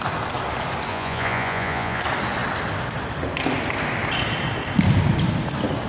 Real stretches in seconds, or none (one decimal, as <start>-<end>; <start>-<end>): 0.0-0.9; 2.0-5.9